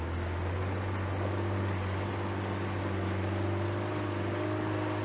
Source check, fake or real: real